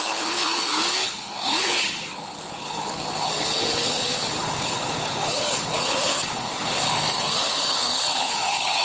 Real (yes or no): no